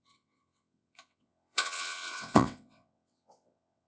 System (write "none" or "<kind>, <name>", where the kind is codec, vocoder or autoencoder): vocoder, WaveNeXt